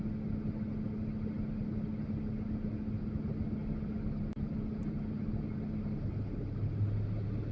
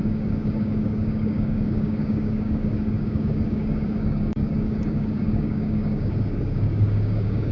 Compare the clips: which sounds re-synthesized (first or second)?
second